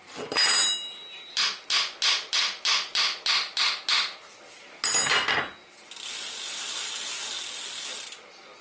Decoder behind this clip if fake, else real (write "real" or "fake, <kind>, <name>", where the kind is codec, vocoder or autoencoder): real